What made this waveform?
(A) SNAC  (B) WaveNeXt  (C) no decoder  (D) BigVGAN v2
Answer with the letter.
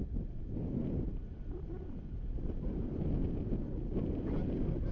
C